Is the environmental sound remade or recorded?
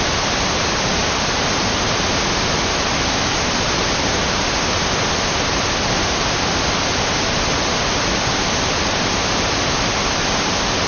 recorded